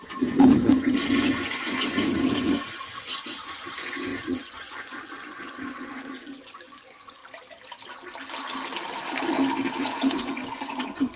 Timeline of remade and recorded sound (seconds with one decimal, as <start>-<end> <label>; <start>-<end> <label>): 0.0-7.2 remade; 7.2-9.8 recorded; 9.8-11.2 remade